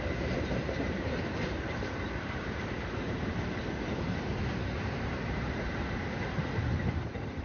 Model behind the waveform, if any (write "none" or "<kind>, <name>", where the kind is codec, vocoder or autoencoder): vocoder, BigVGAN v2